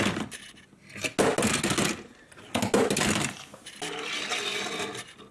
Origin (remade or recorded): recorded